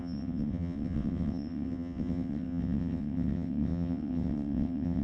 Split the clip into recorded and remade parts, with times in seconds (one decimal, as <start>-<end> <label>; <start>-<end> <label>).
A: 0.0-5.0 remade